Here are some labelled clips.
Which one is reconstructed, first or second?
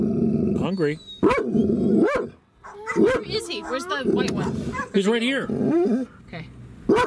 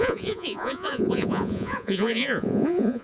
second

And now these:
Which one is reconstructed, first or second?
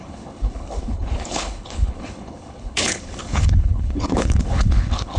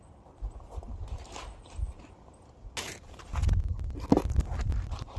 first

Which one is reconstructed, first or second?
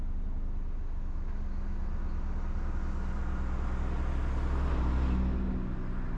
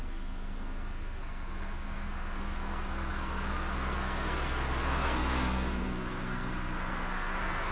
second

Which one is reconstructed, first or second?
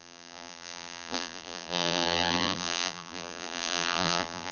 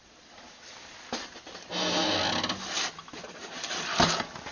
first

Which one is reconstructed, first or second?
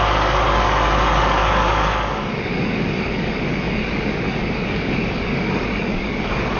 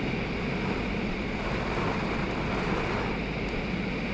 first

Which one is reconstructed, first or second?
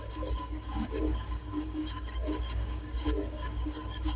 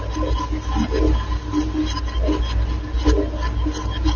first